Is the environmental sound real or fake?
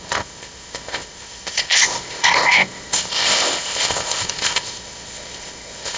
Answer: fake